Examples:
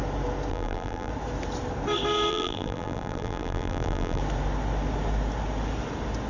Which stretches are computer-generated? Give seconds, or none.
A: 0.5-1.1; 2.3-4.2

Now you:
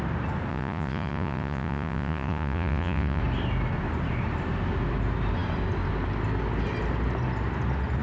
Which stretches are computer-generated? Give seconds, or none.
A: 0.5-3.2

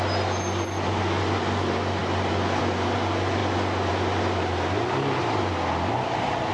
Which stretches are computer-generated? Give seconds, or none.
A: none

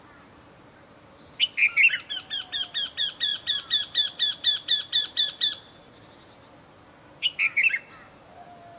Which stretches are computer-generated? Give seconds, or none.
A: none

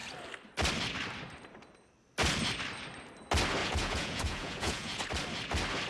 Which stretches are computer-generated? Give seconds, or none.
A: 3.6-5.0

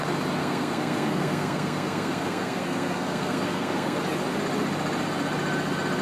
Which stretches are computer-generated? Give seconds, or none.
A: 0.4-4.0